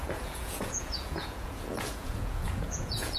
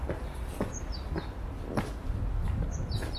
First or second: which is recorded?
second